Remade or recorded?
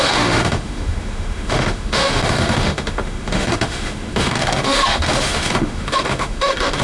remade